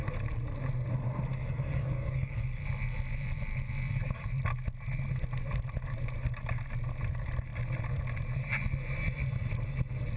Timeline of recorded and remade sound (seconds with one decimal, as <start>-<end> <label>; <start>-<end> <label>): 0.0-1.3 recorded; 1.3-2.6 remade; 2.6-10.2 recorded